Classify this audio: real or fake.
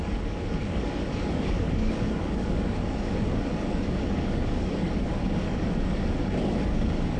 fake